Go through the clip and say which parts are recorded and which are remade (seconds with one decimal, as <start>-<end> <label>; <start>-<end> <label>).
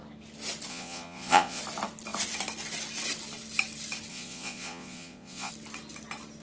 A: 0.0-0.7 recorded; 0.7-1.6 remade; 1.6-4.1 recorded; 4.1-5.5 remade; 5.5-6.4 recorded